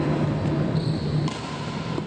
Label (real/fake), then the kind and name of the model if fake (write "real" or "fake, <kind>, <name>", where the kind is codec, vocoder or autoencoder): real